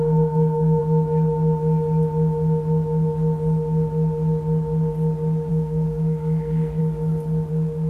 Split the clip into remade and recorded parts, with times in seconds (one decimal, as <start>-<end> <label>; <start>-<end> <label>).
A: 0.0-0.8 remade; 0.8-5.5 recorded; 5.5-6.8 remade; 6.8-7.5 recorded; 7.5-7.9 remade

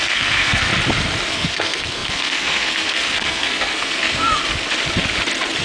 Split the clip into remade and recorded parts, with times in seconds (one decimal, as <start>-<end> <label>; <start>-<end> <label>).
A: 0.0-0.7 remade; 0.7-1.3 recorded; 1.3-4.4 remade; 4.4-5.6 recorded

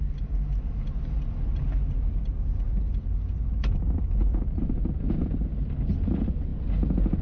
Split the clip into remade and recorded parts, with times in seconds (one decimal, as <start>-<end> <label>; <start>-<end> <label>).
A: 0.0-7.2 recorded

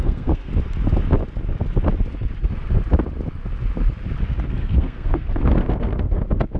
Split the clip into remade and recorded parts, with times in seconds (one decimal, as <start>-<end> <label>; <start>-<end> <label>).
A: 0.0-0.5 remade; 0.5-4.5 recorded; 4.5-6.6 remade